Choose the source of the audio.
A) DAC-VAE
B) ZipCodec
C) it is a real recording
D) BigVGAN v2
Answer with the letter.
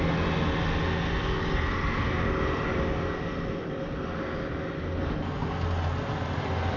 C